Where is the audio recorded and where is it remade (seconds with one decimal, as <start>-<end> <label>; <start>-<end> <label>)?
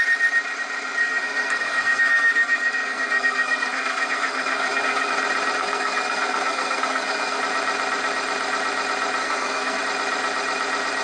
0.0-1.0 recorded; 1.0-5.1 remade; 5.1-5.6 recorded; 5.6-7.4 remade; 7.4-9.2 recorded; 9.2-9.8 remade; 9.8-11.0 recorded